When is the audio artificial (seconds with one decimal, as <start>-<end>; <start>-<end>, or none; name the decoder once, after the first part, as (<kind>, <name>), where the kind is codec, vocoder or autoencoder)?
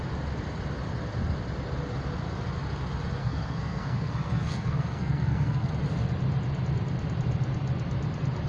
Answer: 3.2-5.7 (codec, SNAC)